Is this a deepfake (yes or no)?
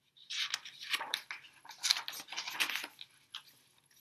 no